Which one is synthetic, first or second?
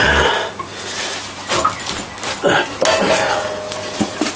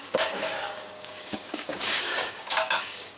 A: second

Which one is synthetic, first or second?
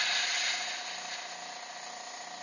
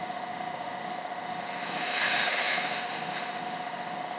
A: second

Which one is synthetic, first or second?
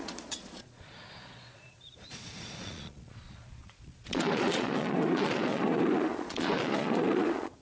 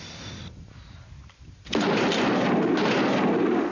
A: first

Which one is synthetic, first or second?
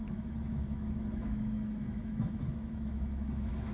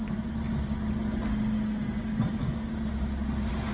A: first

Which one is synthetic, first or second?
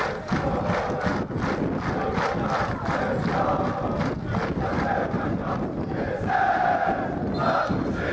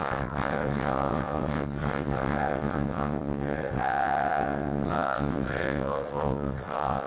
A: second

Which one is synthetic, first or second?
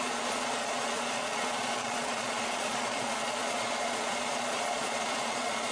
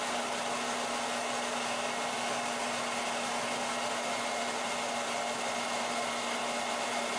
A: first